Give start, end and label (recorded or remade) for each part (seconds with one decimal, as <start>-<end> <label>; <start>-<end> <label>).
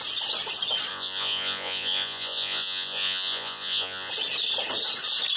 0.0-0.9 recorded; 0.9-4.1 remade; 4.1-5.4 recorded